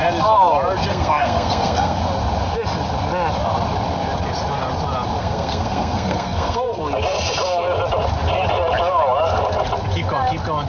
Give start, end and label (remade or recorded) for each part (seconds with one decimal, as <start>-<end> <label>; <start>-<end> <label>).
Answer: 0.0-0.9 recorded; 0.9-2.0 remade; 2.0-5.2 recorded; 5.2-6.8 remade; 6.8-10.7 recorded